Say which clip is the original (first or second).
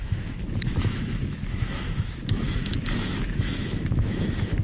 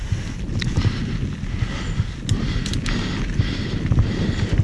second